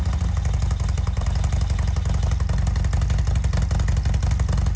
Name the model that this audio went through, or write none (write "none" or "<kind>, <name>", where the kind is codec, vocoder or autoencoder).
none